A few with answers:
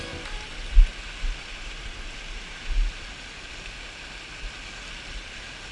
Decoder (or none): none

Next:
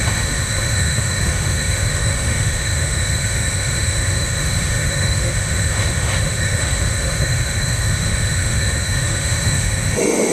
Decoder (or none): autoencoder, DAC-VAE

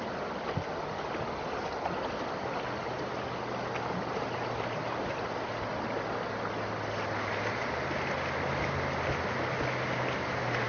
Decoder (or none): none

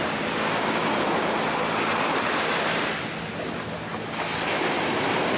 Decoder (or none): none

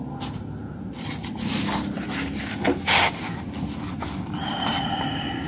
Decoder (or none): none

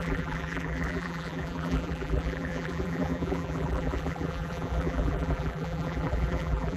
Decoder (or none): vocoder, BigVGAN v2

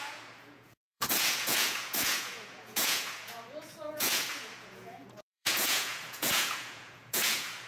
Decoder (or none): vocoder, Vocos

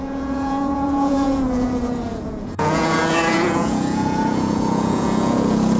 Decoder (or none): vocoder, Vocos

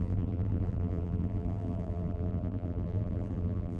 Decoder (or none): vocoder, BigVGAN v2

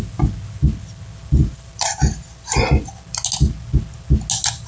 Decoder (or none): none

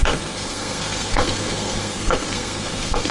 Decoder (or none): codec, SNAC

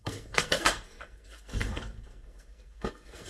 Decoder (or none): codec, SNAC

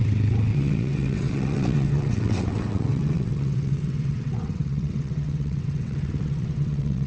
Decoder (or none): vocoder, WaveNeXt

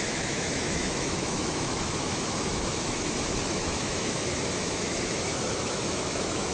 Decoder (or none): autoencoder, DAC-VAE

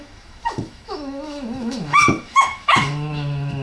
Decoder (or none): autoencoder, DAC-VAE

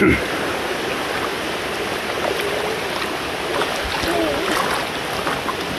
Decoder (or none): none